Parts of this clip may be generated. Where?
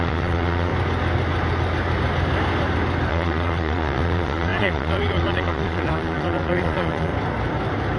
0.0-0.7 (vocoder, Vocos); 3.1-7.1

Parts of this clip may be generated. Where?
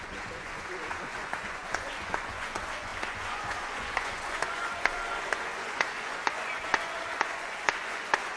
0.0-8.4 (vocoder, Vocos)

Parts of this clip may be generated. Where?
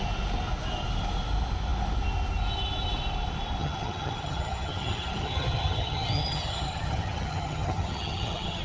3.6-8.6 (vocoder, HiFi-GAN)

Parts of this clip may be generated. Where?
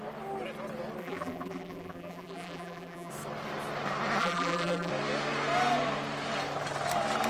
1.0-3.1 (vocoder, BigVGAN v2); 4.2-4.9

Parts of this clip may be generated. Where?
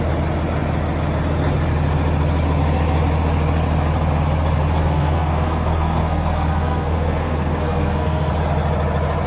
4.8-8.3 (codec, SNAC)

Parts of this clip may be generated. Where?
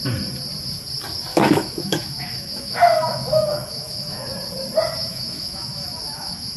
1.3-4.3 (autoencoder, DAC-VAE); 5.0-6.6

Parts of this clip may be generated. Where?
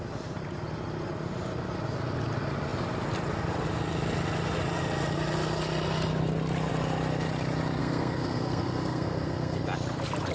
7.8-9.6 (codec, SNAC)